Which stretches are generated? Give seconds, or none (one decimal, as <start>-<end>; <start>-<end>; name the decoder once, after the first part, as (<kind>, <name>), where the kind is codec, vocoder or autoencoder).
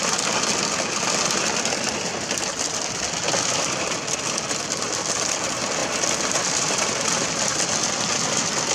none